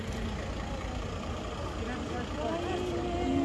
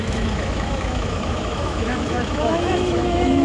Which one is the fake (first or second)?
second